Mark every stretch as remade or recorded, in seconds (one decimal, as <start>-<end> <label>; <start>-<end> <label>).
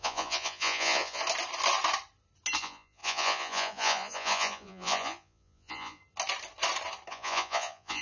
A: 0.0-1.2 remade; 1.2-2.6 recorded; 2.6-6.0 remade; 6.0-7.1 recorded; 7.1-8.0 remade